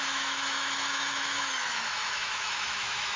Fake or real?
fake